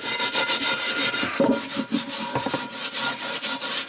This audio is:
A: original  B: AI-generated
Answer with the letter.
A